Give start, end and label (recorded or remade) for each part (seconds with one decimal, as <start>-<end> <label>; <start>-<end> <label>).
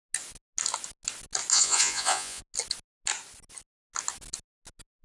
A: 0.0-1.5 recorded; 1.5-2.4 remade; 2.4-5.0 recorded